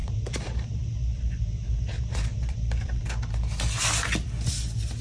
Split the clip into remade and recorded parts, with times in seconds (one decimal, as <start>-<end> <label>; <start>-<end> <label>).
0.0-3.0 remade; 3.0-5.0 recorded